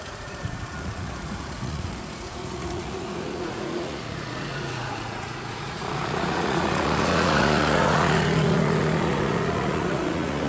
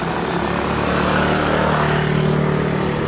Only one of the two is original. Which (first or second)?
second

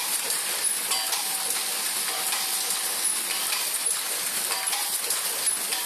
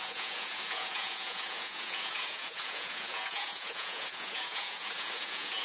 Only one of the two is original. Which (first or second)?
first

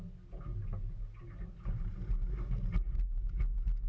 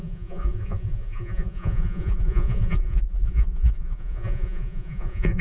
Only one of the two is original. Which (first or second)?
first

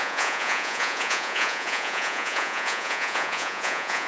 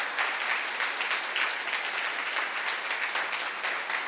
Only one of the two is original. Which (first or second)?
second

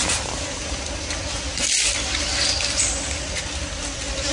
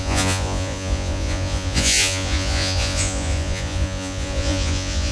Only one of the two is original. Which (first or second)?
first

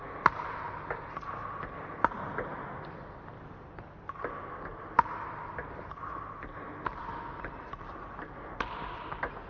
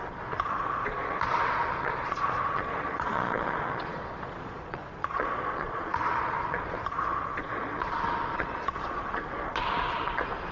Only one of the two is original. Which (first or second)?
first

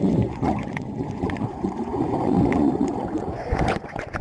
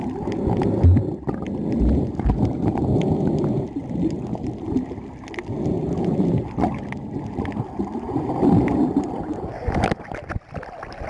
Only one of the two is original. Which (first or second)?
second